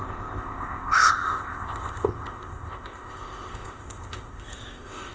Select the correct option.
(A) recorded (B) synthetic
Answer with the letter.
B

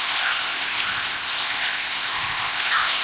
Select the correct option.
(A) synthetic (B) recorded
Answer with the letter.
A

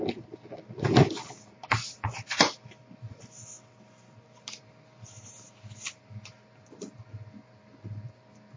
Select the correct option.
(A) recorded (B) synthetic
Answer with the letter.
A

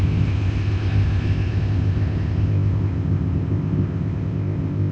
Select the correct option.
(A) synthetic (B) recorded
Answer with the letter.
A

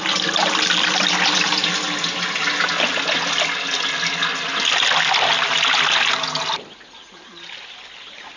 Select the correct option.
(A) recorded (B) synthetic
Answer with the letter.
A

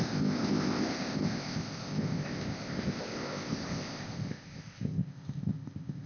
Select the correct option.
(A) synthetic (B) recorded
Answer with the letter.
A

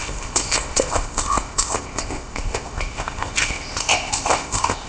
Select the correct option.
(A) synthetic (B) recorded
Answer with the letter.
A